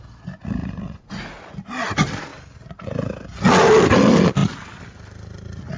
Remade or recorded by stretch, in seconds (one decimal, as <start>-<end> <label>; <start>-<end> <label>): 0.0-0.6 recorded; 0.6-1.4 remade; 1.4-5.8 recorded